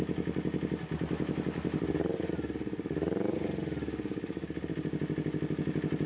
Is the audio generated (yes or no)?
no